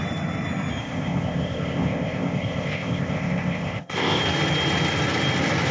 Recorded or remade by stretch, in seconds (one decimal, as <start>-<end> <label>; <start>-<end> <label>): 0.0-0.8 recorded; 0.8-4.2 remade; 4.2-5.7 recorded